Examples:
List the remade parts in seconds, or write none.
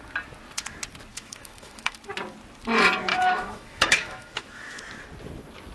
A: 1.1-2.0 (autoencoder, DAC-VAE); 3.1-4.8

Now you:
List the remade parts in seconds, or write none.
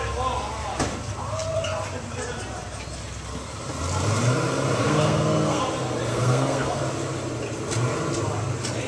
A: 4.8-5.6 (codec, SNAC); 6.1-6.8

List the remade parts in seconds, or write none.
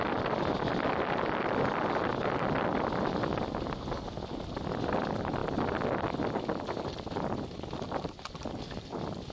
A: none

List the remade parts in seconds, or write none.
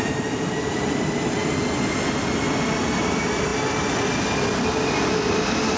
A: none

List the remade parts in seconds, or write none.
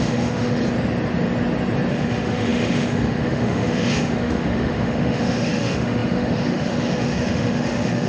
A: 0.0-0.6 (autoencoder, DAC-VAE); 1.9-8.1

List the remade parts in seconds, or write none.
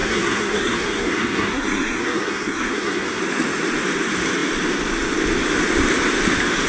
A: 0.0-3.2 (codec, SNAC)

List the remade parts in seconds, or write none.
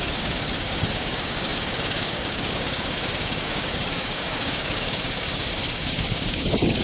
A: 0.0-6.8 (codec, DAC)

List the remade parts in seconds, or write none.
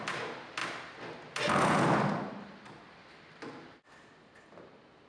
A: none